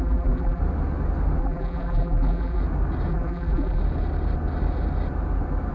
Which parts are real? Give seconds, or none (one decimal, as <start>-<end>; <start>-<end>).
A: 0.6-1.4; 2.6-3.1; 3.8-5.7